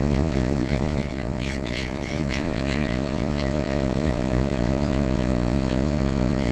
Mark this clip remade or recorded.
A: remade